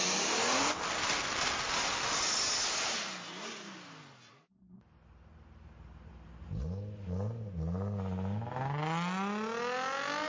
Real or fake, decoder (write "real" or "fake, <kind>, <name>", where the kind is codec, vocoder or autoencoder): real